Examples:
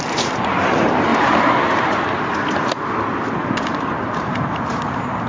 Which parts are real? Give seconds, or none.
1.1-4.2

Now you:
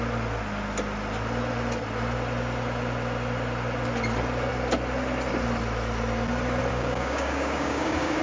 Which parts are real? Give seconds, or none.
0.0-6.7

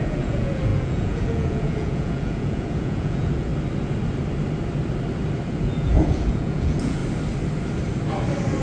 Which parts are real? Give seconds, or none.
3.5-5.5; 7.0-8.6